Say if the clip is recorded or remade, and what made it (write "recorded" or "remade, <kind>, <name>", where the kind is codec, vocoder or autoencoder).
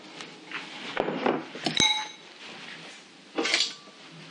recorded